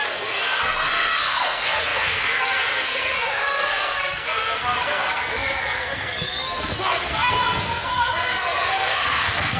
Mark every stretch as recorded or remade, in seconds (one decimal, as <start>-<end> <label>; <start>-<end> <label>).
0.0-9.6 remade